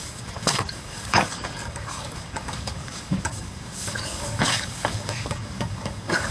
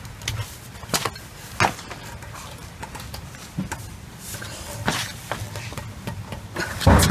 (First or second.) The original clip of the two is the second